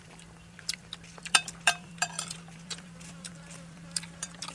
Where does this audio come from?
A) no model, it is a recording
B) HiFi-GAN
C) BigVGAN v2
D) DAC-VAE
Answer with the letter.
C